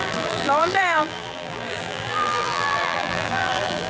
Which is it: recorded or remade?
remade